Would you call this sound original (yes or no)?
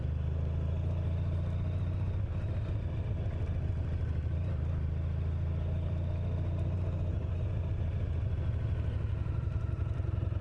yes